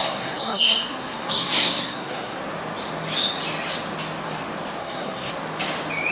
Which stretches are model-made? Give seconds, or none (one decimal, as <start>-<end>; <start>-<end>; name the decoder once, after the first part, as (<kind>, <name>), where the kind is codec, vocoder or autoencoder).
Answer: 0.0-2.4 (codec, SNAC); 4.8-5.3